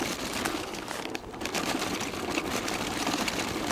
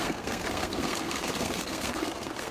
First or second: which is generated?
second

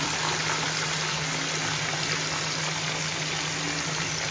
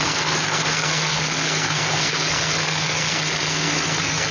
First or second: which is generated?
second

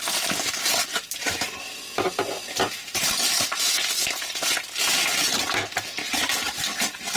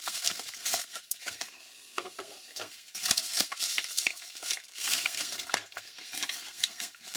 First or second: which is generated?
second